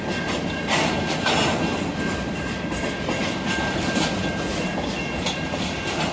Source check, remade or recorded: recorded